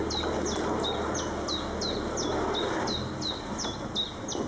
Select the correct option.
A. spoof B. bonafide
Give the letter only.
B